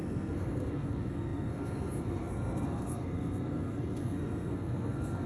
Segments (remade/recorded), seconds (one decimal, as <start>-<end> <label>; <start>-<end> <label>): 0.0-5.3 remade